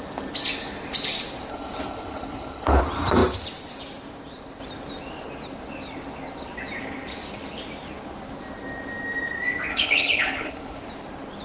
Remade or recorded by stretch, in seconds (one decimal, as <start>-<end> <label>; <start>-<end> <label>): 0.0-1.5 recorded; 1.5-2.8 remade; 2.8-9.7 recorded; 9.7-10.8 remade; 10.8-11.4 recorded